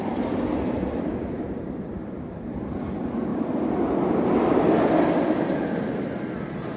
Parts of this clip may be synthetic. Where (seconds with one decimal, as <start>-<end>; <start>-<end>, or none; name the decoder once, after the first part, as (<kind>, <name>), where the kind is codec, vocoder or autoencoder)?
none